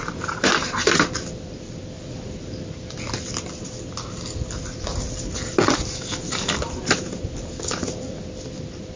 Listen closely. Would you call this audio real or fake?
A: real